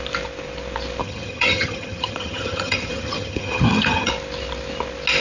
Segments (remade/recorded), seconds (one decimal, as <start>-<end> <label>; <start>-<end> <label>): 0.0-1.0 recorded; 1.0-4.1 remade; 4.1-5.2 recorded